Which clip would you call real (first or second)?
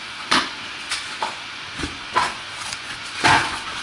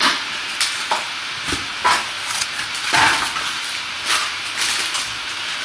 second